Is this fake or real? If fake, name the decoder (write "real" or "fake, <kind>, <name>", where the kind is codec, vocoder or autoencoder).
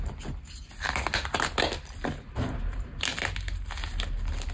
real